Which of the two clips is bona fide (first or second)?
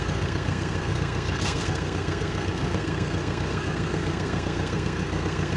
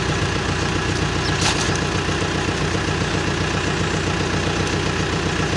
second